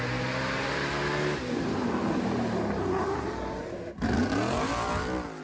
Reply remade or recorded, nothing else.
recorded